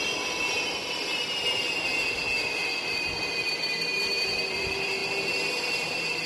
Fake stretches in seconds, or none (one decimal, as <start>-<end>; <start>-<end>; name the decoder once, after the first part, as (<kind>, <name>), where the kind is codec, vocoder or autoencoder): 0.0-1.9 (vocoder, BigVGAN v2); 3.5-5.0; 5.7-6.3